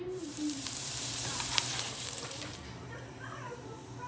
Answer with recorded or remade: remade